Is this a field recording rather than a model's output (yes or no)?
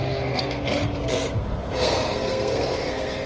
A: no